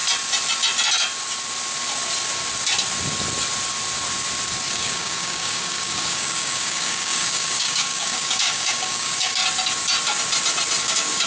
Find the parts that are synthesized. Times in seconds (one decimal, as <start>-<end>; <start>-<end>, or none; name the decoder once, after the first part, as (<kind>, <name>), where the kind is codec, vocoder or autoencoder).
4.7-9.4 (codec, DAC); 10.8-11.3